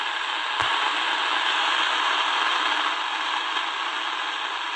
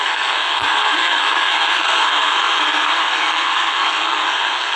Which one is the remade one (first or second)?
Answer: second